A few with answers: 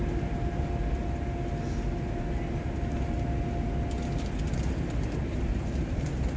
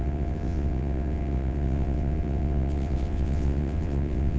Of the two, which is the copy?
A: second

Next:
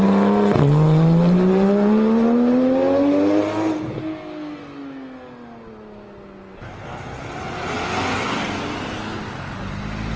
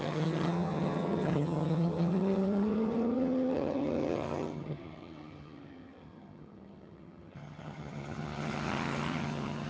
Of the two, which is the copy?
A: second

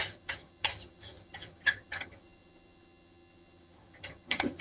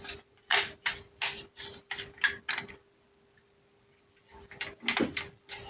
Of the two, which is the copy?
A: first